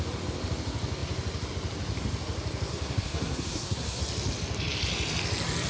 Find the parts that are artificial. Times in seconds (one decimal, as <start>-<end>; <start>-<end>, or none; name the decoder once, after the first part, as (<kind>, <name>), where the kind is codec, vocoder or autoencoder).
2.7-4.0 (codec, SNAC)